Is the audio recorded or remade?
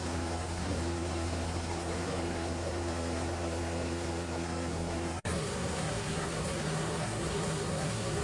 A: remade